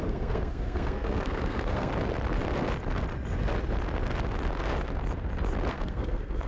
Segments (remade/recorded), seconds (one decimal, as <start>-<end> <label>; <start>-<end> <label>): 0.0-1.9 remade; 1.9-5.7 recorded; 5.7-6.5 remade